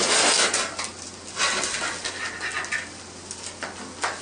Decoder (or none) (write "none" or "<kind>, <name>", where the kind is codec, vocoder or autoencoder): none